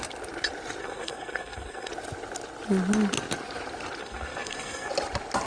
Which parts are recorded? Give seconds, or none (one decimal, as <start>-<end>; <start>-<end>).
0.0-0.8; 1.9-4.0; 4.9-5.5